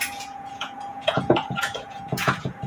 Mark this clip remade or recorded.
remade